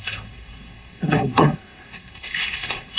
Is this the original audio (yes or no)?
no